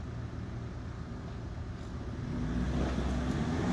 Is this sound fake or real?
real